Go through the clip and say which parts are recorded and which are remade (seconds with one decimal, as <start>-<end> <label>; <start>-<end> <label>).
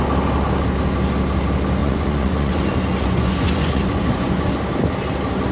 0.0-1.8 recorded; 1.8-4.5 remade; 4.5-5.5 recorded